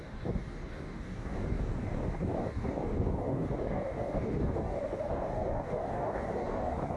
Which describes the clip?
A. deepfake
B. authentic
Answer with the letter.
A